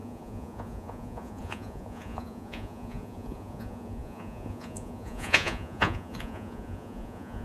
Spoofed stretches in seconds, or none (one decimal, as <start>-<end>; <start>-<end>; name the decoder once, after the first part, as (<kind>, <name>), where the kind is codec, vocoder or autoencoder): 0.0-7.4 (vocoder, Vocos)